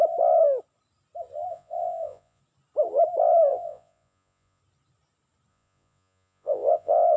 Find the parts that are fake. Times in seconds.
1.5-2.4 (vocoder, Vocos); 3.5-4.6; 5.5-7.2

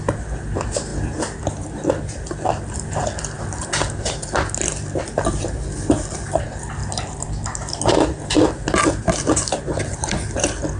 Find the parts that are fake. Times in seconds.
none

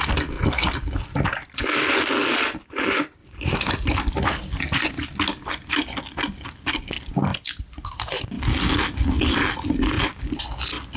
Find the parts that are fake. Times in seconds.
3.2-3.7 (vocoder, BigVGAN v2); 7.3-8.2

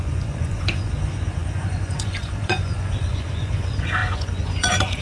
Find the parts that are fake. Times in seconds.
0.0-5.0 (vocoder, Vocos)

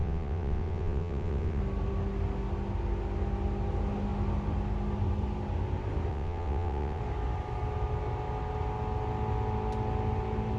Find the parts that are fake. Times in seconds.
0.0-1.6 (vocoder, WaveNeXt); 6.1-7.0

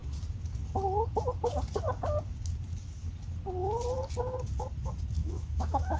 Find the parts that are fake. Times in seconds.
5.2-6.0 (autoencoder, DAC-VAE)

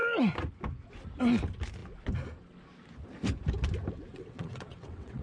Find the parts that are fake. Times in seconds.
4.1-5.2 (vocoder, WaveNeXt)